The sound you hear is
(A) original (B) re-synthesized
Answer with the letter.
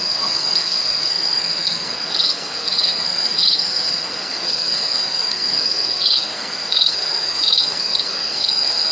B